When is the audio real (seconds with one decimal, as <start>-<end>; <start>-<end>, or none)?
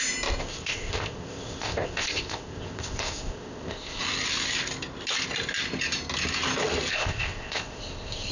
0.0-0.4; 4.0-6.9